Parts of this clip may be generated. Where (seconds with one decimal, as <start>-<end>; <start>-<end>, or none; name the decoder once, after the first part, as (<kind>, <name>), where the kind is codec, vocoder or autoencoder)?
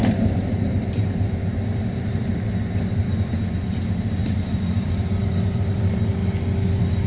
0.0-6.2 (vocoder, BigVGAN v2)